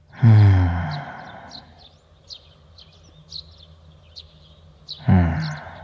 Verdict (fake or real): real